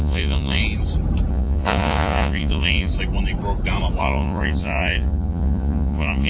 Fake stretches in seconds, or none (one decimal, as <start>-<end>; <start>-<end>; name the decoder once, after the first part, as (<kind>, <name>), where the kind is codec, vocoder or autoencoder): 0.0-0.6 (vocoder, Vocos); 1.3-2.9; 4.0-6.3